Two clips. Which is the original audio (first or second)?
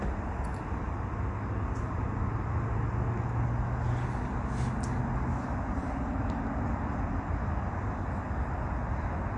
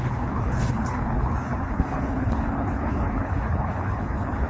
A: first